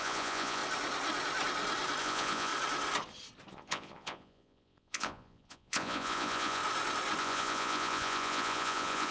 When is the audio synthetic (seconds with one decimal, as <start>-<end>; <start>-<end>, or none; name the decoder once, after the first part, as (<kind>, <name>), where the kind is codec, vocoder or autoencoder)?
0.0-0.6 (vocoder, Vocos); 2.0-2.5; 3.5-6.6; 7.2-9.1